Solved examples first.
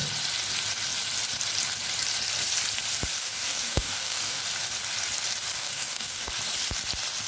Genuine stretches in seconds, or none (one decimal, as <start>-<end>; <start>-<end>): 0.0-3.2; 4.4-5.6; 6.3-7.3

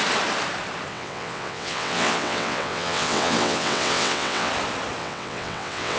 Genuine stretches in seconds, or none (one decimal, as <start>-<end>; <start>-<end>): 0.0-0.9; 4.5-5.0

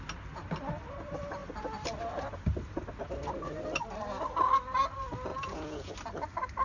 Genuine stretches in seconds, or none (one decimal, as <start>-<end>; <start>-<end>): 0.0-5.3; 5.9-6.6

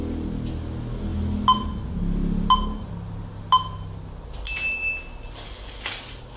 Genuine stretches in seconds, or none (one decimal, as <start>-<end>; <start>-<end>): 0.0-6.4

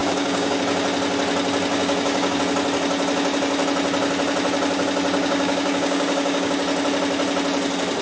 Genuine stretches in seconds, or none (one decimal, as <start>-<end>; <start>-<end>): 0.6-1.7; 2.4-5.2; 6.5-8.0

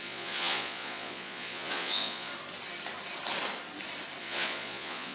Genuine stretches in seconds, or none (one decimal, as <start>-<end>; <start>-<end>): 2.3-4.2

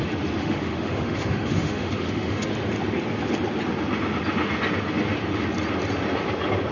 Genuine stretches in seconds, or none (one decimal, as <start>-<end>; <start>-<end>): 0.0-0.4; 2.5-6.7

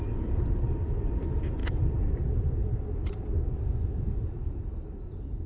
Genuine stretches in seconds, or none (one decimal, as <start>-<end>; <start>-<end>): 0.0-5.5